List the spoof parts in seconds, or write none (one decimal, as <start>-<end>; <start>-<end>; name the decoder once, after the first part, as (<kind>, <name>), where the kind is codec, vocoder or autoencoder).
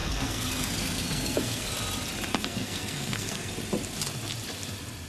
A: 0.0-1.7 (codec, SNAC); 2.3-3.5